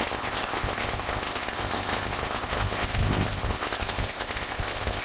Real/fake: fake